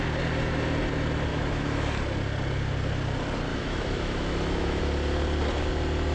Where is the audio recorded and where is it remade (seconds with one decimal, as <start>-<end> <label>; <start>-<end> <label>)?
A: 0.0-1.3 recorded; 1.3-1.9 remade; 1.9-3.5 recorded; 3.5-4.8 remade; 4.8-6.1 recorded